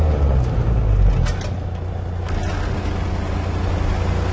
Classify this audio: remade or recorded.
recorded